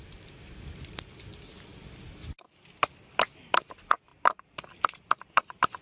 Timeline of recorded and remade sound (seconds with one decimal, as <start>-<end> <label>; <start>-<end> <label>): 0.0-4.1 recorded; 4.1-4.8 remade; 4.8-5.8 recorded